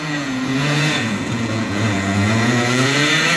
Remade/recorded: remade